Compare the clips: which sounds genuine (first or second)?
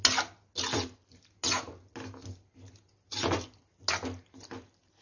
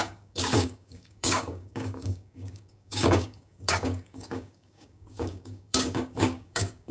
first